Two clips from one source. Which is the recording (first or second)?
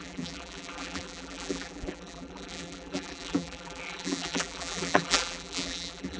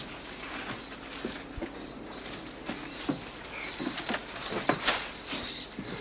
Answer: second